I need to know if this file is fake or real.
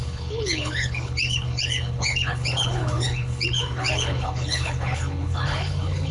fake